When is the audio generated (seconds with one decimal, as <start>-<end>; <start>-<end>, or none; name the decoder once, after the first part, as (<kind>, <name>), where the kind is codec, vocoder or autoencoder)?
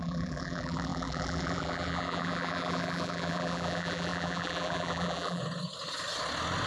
0.0-5.4 (vocoder, BigVGAN v2)